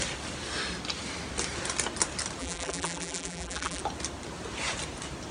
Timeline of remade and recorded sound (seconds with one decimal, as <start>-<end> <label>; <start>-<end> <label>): 0.0-2.4 recorded; 2.4-3.8 remade; 3.8-5.3 recorded